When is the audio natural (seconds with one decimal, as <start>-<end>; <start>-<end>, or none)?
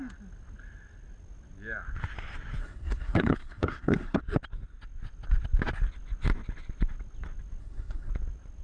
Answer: 0.0-2.6; 4.2-7.6; 8.1-8.6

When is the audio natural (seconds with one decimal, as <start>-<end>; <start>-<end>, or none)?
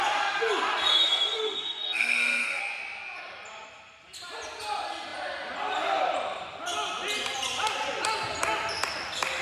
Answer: 0.0-0.9; 2.6-9.4